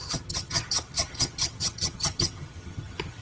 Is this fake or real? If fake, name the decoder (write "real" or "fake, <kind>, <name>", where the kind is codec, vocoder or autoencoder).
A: fake, vocoder, HiFi-GAN